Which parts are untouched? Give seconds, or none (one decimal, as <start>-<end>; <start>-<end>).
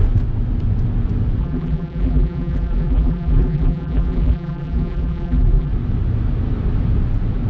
0.0-1.4; 5.7-7.5